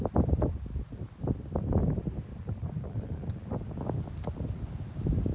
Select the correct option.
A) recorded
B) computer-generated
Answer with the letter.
A